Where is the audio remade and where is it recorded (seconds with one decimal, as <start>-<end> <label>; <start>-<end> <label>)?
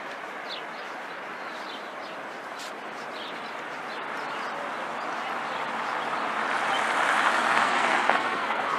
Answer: 0.0-7.3 recorded; 7.3-8.8 remade